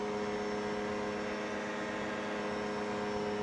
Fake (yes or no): no